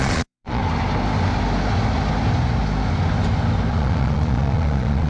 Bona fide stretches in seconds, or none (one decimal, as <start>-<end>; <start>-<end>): 0.6-3.7

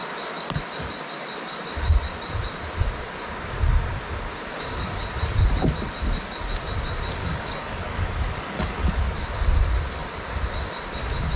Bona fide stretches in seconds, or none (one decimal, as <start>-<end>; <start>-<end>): 0.0-7.2; 9.0-11.4

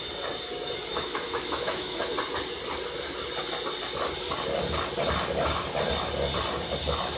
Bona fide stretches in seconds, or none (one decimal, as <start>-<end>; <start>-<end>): 0.0-0.9; 2.1-7.2

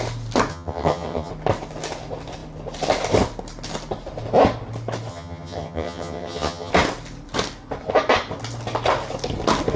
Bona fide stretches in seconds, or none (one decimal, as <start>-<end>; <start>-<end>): 0.0-0.5; 1.3-5.1; 6.7-9.8

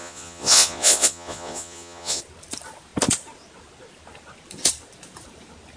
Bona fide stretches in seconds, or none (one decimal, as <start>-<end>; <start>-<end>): 2.2-5.8

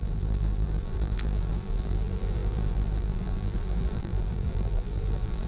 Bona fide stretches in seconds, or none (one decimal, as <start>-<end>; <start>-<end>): none

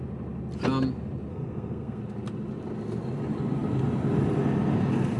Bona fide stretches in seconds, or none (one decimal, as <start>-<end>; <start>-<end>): 0.0-1.3; 2.0-5.2